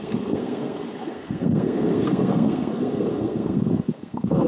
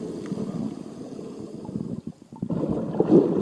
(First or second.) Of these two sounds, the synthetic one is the first